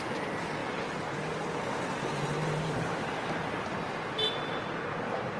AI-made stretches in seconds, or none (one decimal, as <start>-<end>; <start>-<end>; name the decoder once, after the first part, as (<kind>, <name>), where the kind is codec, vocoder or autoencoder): 0.6-3.8 (vocoder, BigVGAN v2)